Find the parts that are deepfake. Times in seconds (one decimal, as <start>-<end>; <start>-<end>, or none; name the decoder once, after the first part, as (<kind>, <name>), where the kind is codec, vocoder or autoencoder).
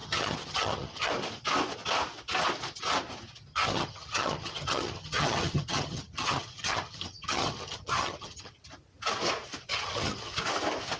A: 0.0-1.1 (vocoder, HiFi-GAN); 3.5-8.5; 9.7-10.4